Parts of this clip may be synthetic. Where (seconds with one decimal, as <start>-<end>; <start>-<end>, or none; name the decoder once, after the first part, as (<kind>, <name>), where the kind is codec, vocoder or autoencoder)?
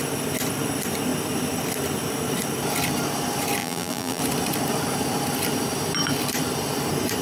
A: 3.6-4.2 (vocoder, BigVGAN v2)